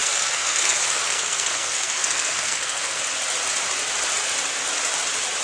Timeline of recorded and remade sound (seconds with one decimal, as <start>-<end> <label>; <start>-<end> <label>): 0.0-3.0 remade; 3.0-5.4 recorded